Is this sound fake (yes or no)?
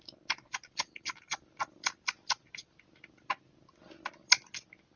no